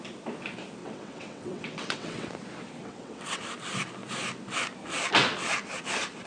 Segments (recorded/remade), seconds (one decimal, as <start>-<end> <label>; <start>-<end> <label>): 0.0-0.8 recorded; 0.8-2.3 remade; 2.3-2.8 recorded; 2.8-3.4 remade; 3.4-6.3 recorded

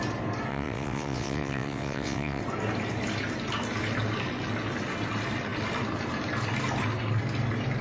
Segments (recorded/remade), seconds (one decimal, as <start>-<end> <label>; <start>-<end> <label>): 0.0-0.5 recorded; 0.5-2.4 remade; 2.4-7.8 recorded

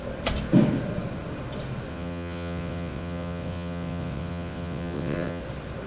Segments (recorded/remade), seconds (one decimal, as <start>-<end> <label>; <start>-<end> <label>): 0.0-1.9 recorded; 1.9-5.4 remade; 5.4-5.9 recorded

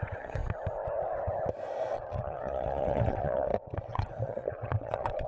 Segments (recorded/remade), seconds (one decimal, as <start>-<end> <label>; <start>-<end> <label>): 0.0-0.4 remade; 0.4-1.9 recorded; 1.9-5.3 remade